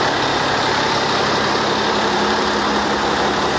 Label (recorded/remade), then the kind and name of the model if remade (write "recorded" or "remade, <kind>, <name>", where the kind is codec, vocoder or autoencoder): remade, vocoder, BigVGAN v2